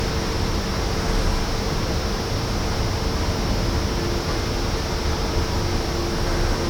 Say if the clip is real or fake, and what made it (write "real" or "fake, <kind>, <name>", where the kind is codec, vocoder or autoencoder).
real